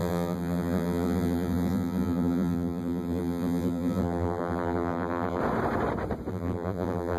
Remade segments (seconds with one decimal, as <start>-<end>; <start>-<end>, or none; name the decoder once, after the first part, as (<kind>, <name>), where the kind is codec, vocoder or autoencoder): 0.0-5.4 (vocoder, BigVGAN v2); 6.3-7.2